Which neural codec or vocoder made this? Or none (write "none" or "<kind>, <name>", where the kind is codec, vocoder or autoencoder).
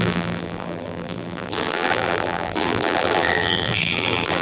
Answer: vocoder, BigVGAN v2